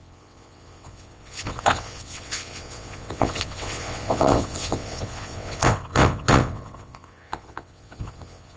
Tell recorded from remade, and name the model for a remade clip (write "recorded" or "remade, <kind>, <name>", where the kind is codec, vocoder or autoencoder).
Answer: remade, vocoder, WaveNeXt